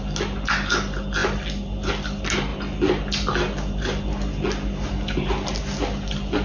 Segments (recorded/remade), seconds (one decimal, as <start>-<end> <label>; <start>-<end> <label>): 0.0-6.4 recorded